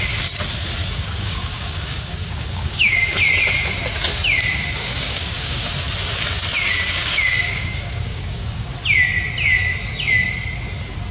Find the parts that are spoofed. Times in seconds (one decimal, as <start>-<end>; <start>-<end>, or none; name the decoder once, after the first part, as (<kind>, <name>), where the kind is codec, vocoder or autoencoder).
0.8-3.2 (codec, DAC); 4.8-5.7; 7.0-8.7